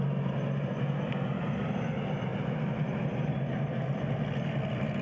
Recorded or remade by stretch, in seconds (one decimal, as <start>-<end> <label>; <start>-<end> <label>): 0.0-5.0 recorded